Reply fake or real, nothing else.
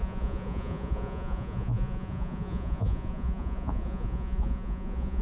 fake